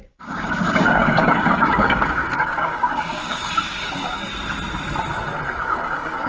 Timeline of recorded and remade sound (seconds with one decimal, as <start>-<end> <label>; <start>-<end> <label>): 0.0-4.3 remade; 4.3-5.6 recorded; 5.6-6.3 remade